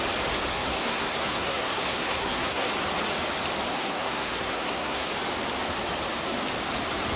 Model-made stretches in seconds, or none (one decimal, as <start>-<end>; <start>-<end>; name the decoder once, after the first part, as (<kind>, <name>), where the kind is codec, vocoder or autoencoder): 0.5-2.7 (codec, SNAC); 3.7-5.1